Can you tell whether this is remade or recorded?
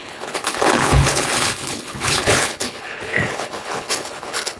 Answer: remade